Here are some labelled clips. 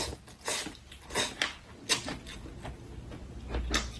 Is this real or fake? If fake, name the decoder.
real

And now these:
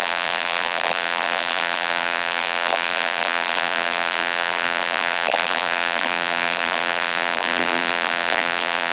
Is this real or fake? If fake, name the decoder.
fake, vocoder, BigVGAN v2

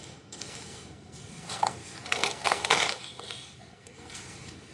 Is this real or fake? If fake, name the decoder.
fake, codec, SNAC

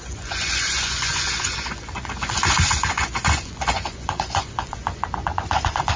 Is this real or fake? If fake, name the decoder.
fake, vocoder, Vocos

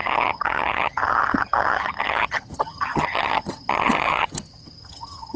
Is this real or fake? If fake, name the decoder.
fake, vocoder, HiFi-GAN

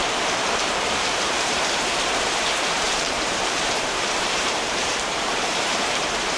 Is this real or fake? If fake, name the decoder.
fake, vocoder, BigVGAN v2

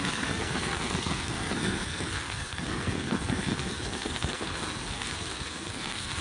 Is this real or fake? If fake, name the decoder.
fake, codec, SNAC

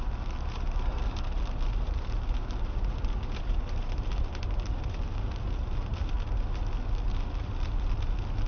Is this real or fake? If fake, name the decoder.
real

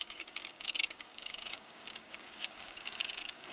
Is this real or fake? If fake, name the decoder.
fake, codec, DAC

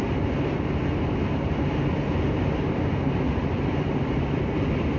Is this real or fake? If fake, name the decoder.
real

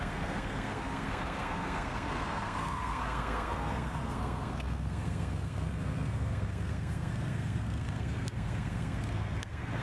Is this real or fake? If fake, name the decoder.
fake, codec, SNAC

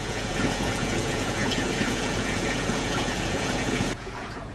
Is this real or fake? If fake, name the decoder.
fake, vocoder, Vocos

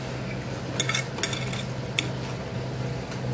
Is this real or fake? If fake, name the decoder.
real